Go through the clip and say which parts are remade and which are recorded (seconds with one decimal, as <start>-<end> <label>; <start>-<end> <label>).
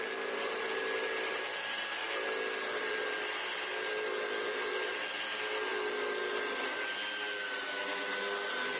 0.0-8.8 recorded